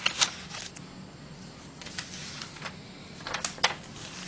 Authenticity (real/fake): real